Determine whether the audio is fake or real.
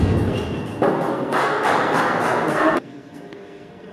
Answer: fake